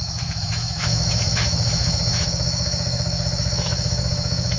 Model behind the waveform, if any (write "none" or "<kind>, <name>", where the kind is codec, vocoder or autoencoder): autoencoder, DAC-VAE